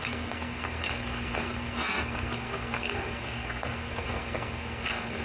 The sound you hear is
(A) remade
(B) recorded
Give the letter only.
A